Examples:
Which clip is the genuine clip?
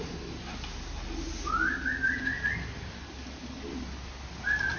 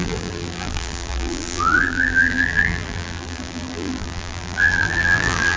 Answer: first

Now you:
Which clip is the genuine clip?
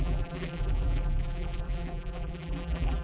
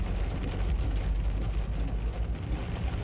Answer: second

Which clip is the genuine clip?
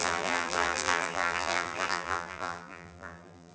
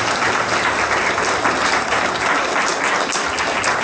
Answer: second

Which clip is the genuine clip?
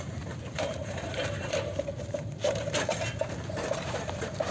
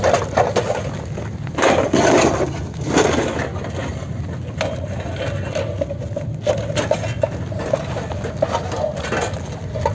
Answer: second